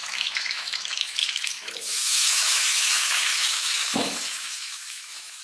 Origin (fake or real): fake